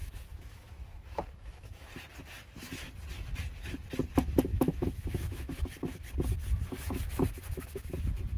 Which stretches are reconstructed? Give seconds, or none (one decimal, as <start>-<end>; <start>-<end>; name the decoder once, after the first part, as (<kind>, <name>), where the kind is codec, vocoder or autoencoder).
0.0-1.9 (autoencoder, DAC-VAE); 4.5-5.6